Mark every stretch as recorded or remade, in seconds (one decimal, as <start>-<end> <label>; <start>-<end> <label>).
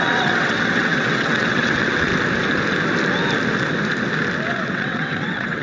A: 0.0-2.1 remade; 2.1-4.5 recorded; 4.5-5.6 remade